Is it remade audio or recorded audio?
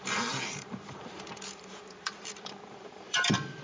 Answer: remade